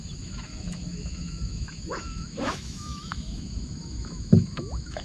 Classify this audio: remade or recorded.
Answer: remade